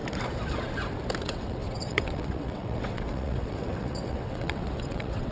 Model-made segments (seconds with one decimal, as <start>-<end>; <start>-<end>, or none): 1.2-5.3